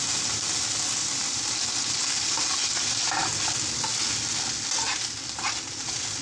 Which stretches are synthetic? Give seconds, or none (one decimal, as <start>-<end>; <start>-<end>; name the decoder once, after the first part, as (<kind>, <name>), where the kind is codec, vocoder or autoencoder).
none